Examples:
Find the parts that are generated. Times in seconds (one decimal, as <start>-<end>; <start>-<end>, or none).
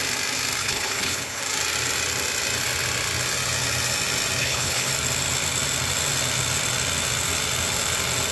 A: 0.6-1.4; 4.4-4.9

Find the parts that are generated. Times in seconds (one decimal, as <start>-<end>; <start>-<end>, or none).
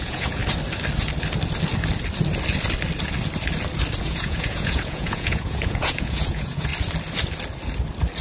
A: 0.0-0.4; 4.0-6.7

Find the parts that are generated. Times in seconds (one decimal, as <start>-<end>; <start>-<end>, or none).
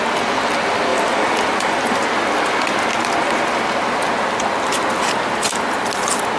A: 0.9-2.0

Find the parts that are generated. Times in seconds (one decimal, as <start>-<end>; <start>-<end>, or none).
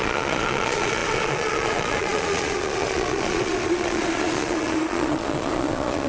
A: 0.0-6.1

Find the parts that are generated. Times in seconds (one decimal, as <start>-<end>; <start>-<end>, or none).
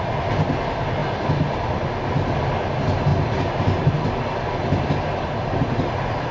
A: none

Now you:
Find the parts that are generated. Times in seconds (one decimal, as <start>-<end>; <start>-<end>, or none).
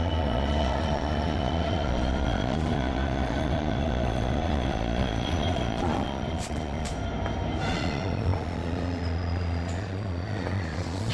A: 0.0-6.9; 7.7-11.1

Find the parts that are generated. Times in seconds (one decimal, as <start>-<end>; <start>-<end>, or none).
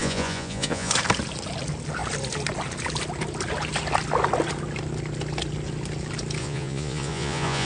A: 0.0-0.9; 6.4-7.7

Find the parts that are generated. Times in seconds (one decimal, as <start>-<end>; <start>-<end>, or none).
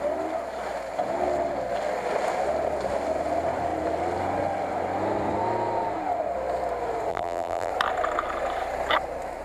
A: 7.1-7.7